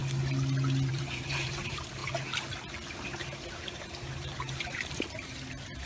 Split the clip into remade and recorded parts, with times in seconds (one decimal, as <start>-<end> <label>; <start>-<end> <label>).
0.0-0.9 recorded; 0.9-2.0 remade; 2.0-2.9 recorded; 2.9-5.9 remade